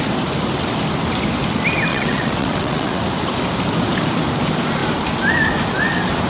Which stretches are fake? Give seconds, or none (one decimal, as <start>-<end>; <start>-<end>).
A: 1.9-3.0